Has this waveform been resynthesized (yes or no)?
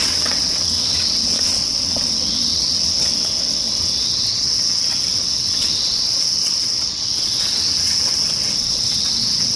yes